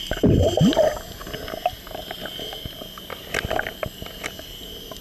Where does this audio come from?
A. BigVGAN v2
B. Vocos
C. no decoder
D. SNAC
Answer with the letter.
C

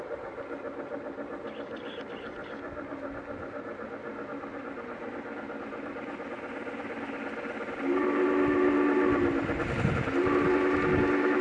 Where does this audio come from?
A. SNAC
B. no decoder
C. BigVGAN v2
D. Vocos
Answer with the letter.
B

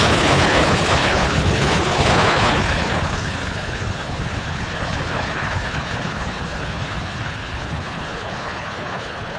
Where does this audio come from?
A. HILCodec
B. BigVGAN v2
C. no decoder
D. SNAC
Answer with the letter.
A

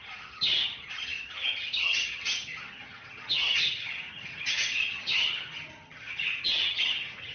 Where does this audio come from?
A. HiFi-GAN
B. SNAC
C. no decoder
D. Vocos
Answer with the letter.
A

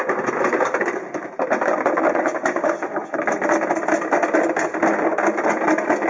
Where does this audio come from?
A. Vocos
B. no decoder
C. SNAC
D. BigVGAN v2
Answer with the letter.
B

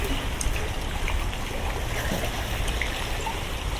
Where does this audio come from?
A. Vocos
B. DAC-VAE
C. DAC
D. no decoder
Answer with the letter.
D